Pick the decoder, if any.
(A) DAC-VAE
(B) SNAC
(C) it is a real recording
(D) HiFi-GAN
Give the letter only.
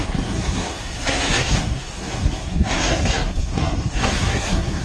B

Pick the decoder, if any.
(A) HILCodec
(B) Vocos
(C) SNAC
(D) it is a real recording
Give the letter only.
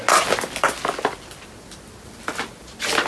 D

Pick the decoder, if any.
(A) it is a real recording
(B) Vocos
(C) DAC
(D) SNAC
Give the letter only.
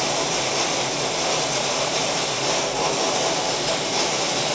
A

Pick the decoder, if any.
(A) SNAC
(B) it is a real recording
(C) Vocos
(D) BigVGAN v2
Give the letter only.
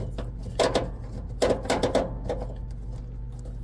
B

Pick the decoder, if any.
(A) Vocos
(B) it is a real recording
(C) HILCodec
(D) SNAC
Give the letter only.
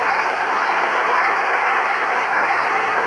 D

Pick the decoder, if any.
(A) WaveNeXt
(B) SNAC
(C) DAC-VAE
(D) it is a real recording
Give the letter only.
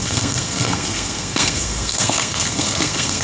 B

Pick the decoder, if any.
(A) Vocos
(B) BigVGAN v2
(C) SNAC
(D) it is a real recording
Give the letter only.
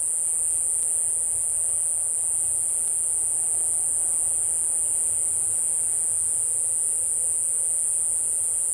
D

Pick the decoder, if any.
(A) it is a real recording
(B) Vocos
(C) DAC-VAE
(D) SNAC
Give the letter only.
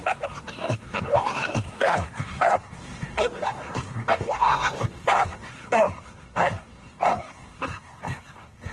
D